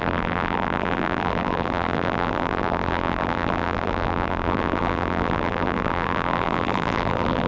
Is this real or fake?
fake